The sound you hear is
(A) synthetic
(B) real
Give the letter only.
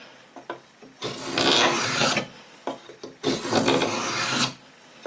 B